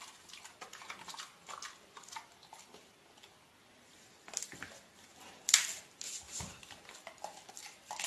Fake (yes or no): no